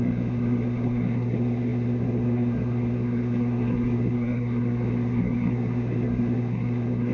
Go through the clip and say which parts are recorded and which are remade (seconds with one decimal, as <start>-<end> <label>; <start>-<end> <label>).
0.0-7.1 remade